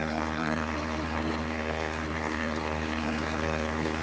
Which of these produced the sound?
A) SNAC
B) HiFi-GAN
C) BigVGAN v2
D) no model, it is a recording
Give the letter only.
A